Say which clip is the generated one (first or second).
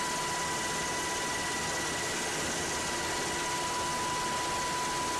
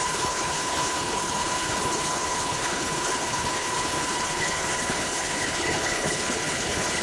second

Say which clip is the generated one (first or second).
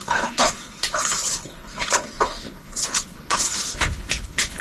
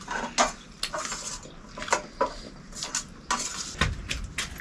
first